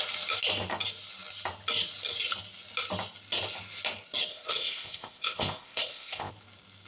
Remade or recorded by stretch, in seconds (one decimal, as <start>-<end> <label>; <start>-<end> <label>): 0.0-4.3 recorded; 4.3-6.3 remade; 6.3-6.9 recorded